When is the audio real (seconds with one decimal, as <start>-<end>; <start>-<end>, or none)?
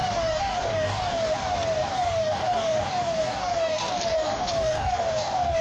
1.3-1.9